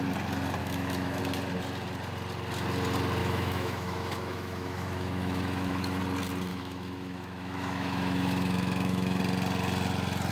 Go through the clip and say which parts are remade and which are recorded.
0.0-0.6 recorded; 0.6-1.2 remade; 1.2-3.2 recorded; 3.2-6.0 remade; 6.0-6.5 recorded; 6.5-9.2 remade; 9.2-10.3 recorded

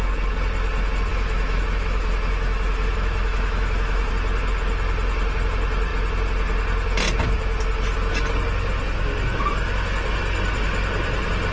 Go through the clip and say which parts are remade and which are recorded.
0.0-1.1 recorded; 1.1-4.1 remade; 4.1-11.5 recorded

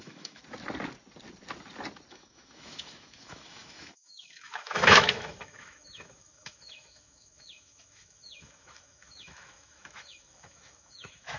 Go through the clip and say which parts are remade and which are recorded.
0.0-0.4 remade; 0.4-2.1 recorded; 2.1-11.4 remade

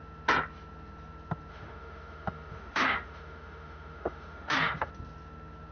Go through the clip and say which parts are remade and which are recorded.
0.0-1.5 recorded; 1.5-4.9 remade; 4.9-5.7 recorded

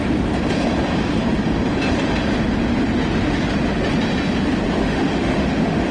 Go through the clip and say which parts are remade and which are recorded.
0.0-4.8 recorded; 4.8-5.9 remade

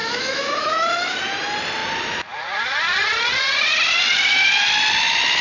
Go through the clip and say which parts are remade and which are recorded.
0.0-1.2 remade; 1.2-5.4 recorded